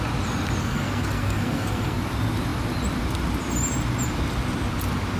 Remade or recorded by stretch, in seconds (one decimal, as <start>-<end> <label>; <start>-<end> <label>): 0.0-0.6 recorded; 0.6-2.0 remade; 2.0-5.2 recorded